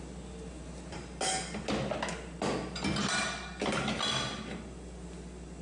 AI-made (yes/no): no